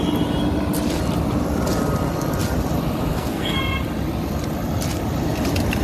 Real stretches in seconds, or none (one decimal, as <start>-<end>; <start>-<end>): 0.0-3.1; 3.6-5.8